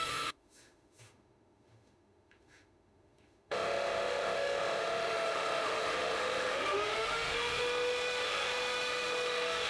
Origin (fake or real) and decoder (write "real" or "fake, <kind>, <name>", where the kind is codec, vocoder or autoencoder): fake, autoencoder, DAC-VAE